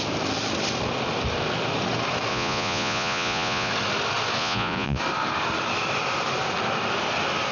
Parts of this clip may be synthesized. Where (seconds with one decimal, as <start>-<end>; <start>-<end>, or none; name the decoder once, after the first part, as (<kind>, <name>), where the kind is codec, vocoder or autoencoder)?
2.3-3.7 (vocoder, Vocos); 4.4-5.0